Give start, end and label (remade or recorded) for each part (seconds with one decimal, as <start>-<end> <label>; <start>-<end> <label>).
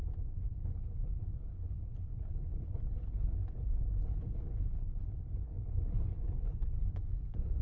0.0-0.5 recorded; 0.5-7.6 remade